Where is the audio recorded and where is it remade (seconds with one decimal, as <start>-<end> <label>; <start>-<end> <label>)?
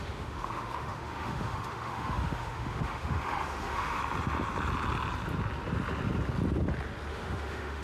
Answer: 0.0-4.0 remade; 4.0-7.1 recorded; 7.1-7.8 remade